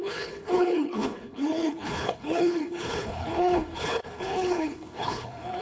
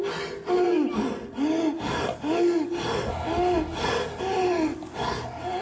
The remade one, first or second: first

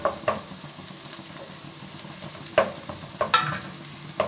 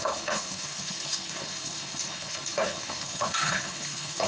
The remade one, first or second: second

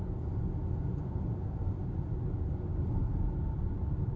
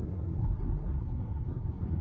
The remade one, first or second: second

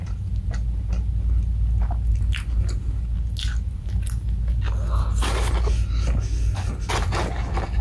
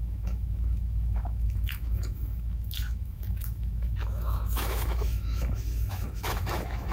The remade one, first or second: second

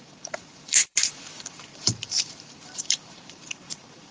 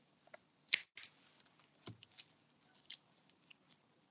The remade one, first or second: first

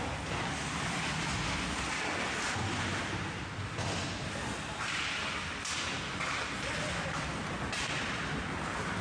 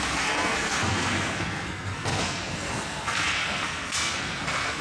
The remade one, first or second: second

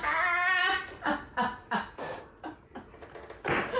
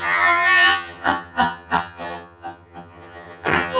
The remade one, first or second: second